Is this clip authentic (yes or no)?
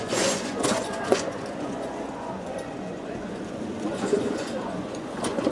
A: no